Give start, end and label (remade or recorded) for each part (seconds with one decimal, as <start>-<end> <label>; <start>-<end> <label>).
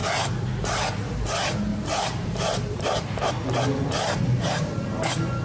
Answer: 0.0-0.5 remade; 0.5-1.7 recorded; 1.7-3.3 remade; 3.3-5.4 recorded